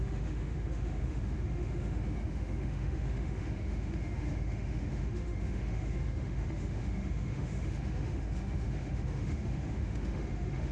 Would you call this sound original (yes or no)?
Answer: no